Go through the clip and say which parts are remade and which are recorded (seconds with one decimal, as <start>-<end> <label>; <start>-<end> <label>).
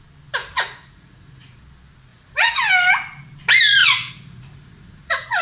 0.0-0.4 recorded; 0.4-1.6 remade; 1.6-2.1 recorded; 2.1-2.7 remade; 2.7-3.8 recorded; 3.8-5.4 remade